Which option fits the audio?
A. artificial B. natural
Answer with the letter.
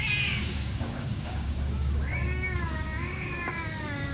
A